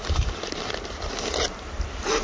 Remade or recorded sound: recorded